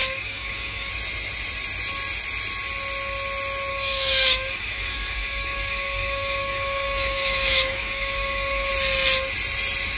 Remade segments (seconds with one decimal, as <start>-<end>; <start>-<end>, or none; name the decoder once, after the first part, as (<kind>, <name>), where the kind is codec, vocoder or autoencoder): 0.0-0.9 (codec, DAC); 3.7-8.7